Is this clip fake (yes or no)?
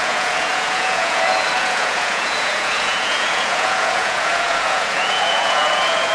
yes